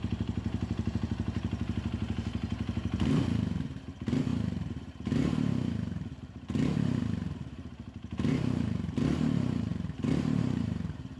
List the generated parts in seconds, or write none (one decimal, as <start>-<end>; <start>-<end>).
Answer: 0.0-11.2